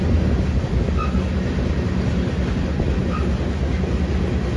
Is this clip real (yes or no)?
yes